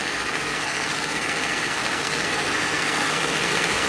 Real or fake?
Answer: fake